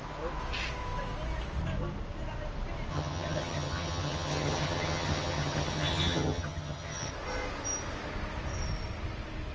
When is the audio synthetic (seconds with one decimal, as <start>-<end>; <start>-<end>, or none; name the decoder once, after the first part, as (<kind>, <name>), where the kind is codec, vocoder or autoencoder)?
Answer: 2.9-7.1 (vocoder, HiFi-GAN)